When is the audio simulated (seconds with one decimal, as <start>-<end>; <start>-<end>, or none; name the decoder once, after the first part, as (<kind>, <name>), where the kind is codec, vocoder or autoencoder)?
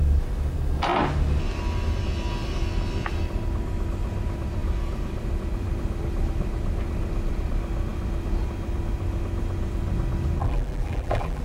10.4-11.4 (vocoder, BigVGAN v2)